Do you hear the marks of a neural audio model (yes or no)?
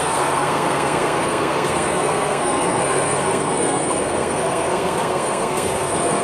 yes